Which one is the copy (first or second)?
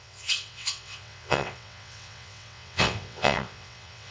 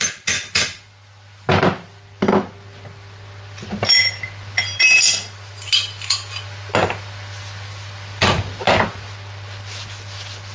first